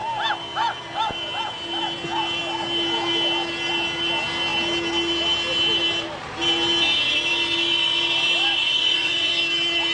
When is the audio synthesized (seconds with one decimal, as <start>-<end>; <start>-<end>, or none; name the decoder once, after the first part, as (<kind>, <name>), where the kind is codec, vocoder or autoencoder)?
8.6-9.3 (vocoder, Vocos)